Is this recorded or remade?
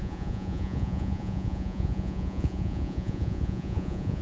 remade